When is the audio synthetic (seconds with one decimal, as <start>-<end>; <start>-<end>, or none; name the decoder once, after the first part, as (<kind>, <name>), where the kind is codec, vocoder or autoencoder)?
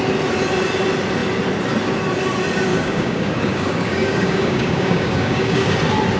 2.7-5.7 (codec, DAC)